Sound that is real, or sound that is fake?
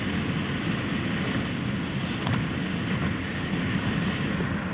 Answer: real